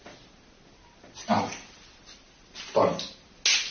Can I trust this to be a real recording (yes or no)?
yes